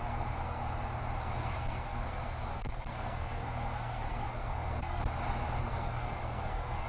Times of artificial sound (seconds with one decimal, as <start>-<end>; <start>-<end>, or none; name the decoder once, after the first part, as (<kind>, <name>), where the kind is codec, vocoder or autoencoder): 0.0-0.6 (codec, SNAC); 1.2-5.0; 5.6-6.9